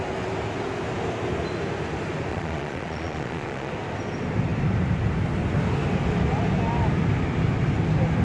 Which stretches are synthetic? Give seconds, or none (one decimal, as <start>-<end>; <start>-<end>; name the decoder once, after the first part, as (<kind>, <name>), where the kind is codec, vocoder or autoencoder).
2.3-3.7 (vocoder, Vocos)